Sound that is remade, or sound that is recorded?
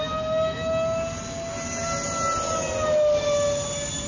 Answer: recorded